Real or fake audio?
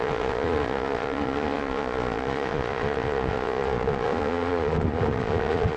fake